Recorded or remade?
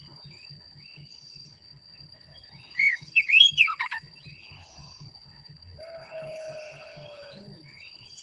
remade